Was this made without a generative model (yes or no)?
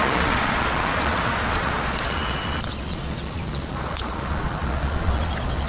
no